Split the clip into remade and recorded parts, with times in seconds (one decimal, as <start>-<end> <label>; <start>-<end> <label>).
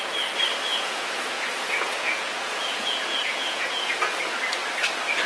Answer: 0.0-0.7 recorded; 0.7-3.9 remade; 3.9-5.3 recorded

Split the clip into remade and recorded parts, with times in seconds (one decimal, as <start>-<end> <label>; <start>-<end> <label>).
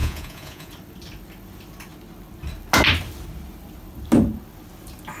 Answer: 0.0-0.7 remade; 0.7-5.2 recorded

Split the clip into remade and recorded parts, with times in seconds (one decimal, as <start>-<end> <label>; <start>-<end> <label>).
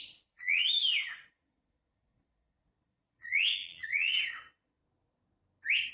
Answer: 0.0-0.6 remade; 0.6-1.1 recorded; 1.1-4.8 remade; 4.8-5.9 recorded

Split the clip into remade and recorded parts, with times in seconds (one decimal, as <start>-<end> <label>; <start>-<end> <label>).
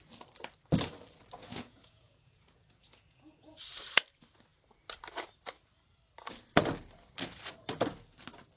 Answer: 0.0-1.5 recorded; 1.5-3.6 remade; 3.6-8.6 recorded